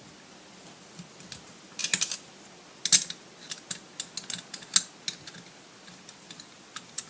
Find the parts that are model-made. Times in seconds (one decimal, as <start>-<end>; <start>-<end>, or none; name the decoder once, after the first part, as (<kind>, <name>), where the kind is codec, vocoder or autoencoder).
none